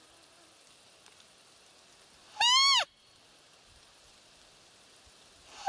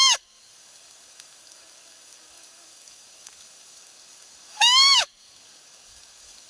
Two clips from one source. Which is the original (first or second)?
first